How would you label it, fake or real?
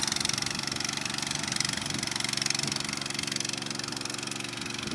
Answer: real